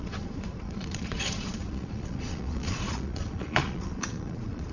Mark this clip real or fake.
fake